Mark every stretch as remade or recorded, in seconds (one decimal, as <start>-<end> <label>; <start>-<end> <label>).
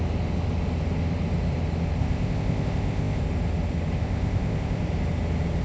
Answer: 0.0-2.0 recorded; 2.0-3.2 remade; 3.2-4.0 recorded; 4.0-4.8 remade; 4.8-5.6 recorded